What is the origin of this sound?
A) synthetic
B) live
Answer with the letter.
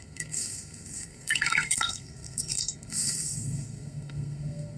A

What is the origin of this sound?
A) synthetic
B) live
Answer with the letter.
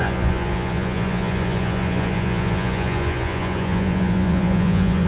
A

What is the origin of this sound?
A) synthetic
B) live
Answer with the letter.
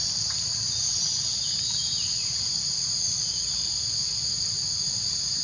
B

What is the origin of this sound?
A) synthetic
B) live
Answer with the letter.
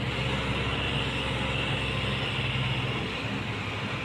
B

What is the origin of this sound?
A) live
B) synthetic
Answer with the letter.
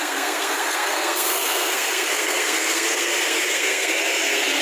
B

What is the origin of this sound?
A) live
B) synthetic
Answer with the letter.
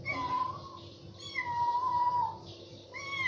A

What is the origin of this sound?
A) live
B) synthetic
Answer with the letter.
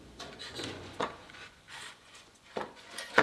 B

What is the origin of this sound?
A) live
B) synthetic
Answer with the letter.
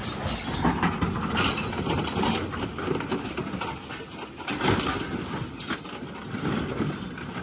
A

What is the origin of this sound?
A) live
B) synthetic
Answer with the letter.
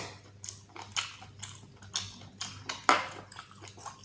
A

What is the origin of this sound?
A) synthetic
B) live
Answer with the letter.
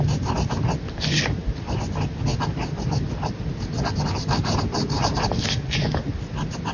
B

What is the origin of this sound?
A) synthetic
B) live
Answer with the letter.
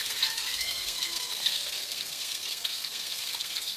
A